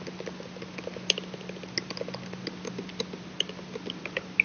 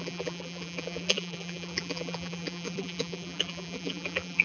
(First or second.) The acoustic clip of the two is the first